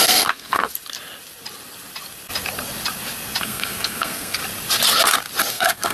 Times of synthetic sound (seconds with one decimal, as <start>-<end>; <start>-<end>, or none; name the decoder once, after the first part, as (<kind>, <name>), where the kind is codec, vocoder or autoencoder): 0.0-0.7 (codec, SNAC); 3.4-4.4; 5.5-5.9